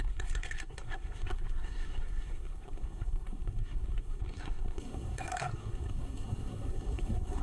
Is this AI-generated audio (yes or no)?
yes